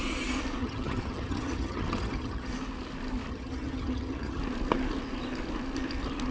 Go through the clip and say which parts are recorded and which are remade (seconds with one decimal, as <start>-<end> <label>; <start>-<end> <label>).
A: 0.0-0.6 recorded; 0.6-2.5 remade; 2.5-3.3 recorded; 3.3-4.4 remade; 4.4-6.3 recorded